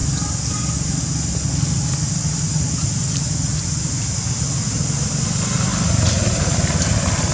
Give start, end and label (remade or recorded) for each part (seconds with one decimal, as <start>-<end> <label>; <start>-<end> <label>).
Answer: 0.0-7.3 recorded